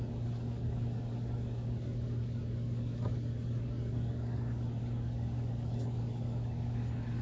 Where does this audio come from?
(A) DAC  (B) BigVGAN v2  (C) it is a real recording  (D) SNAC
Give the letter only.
A